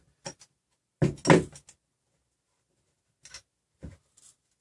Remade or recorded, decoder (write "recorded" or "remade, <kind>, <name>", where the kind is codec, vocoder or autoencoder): recorded